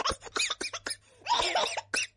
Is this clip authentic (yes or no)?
yes